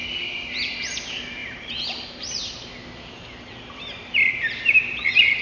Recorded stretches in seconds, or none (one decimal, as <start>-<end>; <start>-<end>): 0.7-1.4; 2.7-5.4

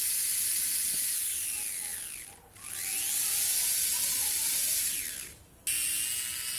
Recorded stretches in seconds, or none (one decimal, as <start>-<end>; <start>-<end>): 0.0-4.0; 4.9-6.6

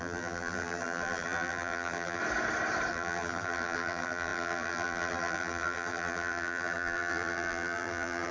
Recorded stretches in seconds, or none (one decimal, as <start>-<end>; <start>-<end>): 2.2-2.9

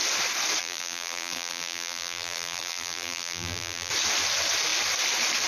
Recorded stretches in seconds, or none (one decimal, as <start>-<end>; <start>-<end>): 0.0-0.6; 3.9-5.5